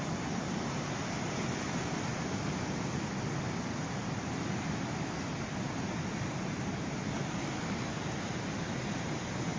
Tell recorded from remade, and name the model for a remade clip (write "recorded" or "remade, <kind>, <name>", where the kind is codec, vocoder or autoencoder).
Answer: recorded